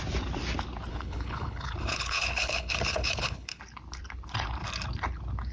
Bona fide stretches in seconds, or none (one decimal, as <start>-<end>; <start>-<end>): 0.0-0.9; 3.6-5.5